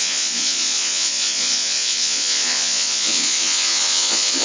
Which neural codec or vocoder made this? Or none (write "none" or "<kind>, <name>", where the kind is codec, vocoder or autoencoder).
vocoder, Vocos